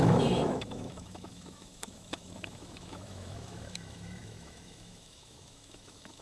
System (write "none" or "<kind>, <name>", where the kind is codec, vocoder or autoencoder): autoencoder, DAC-VAE